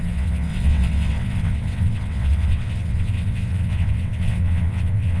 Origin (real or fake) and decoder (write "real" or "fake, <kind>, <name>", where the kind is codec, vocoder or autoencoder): fake, vocoder, WaveNeXt